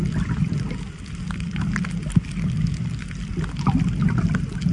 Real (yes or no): yes